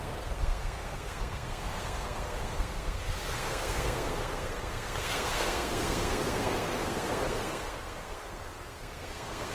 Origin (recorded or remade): remade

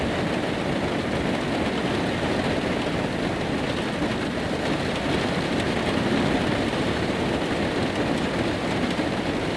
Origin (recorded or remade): recorded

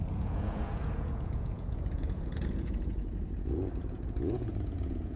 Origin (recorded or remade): remade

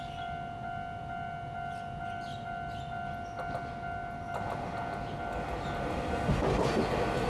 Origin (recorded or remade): recorded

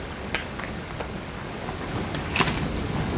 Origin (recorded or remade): remade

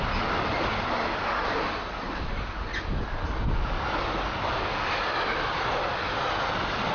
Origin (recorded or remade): recorded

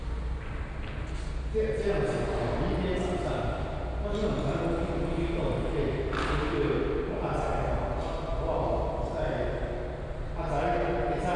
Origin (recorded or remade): recorded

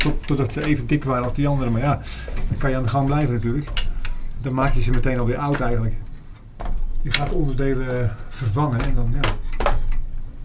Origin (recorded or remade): recorded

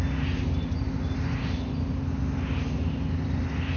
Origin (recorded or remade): recorded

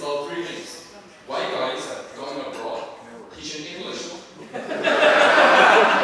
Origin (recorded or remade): recorded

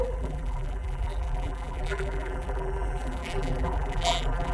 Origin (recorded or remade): remade